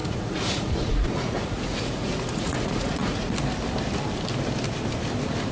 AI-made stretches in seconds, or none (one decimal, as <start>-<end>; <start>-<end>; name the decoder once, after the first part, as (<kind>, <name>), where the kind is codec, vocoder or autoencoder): 0.0-3.3 (vocoder, Vocos)